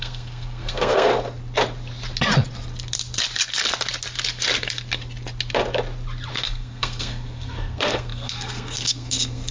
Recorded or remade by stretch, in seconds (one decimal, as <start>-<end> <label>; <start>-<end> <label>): 0.0-1.1 remade; 1.1-6.3 recorded; 6.3-9.5 remade